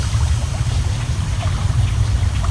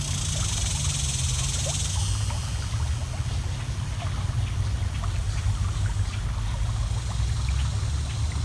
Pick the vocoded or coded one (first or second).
first